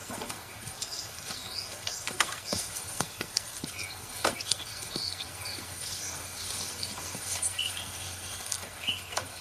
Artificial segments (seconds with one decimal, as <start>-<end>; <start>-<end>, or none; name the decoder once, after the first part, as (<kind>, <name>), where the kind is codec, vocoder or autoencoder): 0.0-9.4 (codec, SNAC)